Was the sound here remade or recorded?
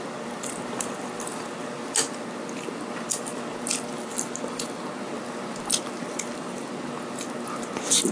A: recorded